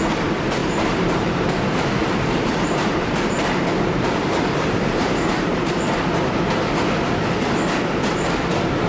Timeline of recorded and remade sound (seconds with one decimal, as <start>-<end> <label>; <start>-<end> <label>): 0.0-0.6 recorded; 0.6-5.7 remade; 5.7-8.9 recorded